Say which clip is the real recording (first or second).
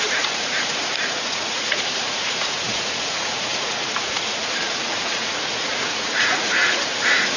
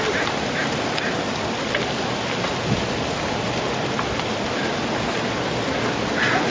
second